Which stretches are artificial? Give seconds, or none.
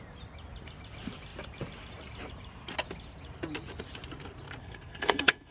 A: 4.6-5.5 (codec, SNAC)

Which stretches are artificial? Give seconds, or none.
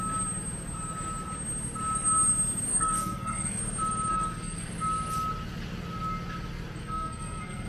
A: 2.7-3.6 (codec, SNAC); 4.1-4.7; 6.8-7.7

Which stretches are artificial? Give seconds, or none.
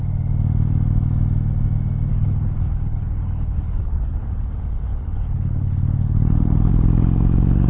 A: 2.1-6.7 (codec, HILCodec)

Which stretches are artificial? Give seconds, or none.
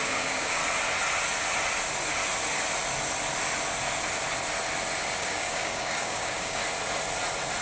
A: 0.0-0.6 (codec, DAC); 5.2-6.6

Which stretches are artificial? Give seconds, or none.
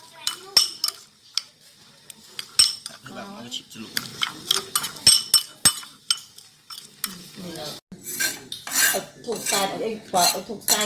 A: none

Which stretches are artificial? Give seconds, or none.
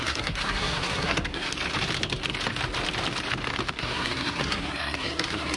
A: 0.0-1.5 (codec, SNAC); 3.8-5.6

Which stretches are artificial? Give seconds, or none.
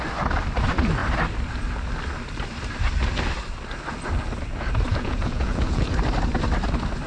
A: 4.9-5.9 (vocoder, Vocos)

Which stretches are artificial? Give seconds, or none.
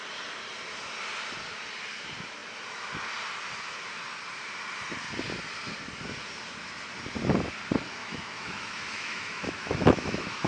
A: 8.0-10.5 (autoencoder, DAC-VAE)